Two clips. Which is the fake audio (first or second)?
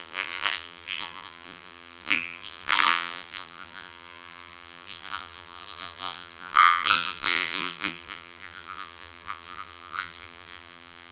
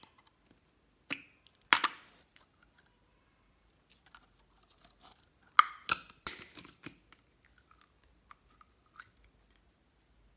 first